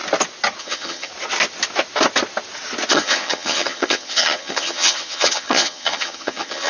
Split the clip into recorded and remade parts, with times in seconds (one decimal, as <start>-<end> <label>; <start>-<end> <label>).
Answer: 0.0-0.6 recorded; 0.6-1.1 remade; 1.1-2.9 recorded; 2.9-6.7 remade